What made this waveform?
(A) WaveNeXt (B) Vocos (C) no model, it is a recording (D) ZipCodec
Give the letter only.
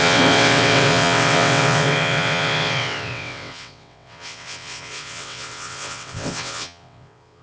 A